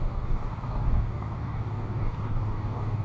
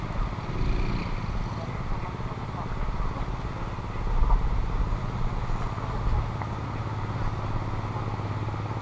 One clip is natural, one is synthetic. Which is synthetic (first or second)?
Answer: first